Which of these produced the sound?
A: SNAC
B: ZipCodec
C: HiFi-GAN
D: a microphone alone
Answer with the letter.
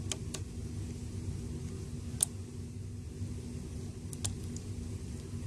D